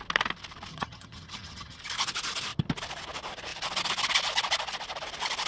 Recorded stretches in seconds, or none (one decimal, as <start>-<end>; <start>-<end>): 0.0-0.7; 1.8-5.5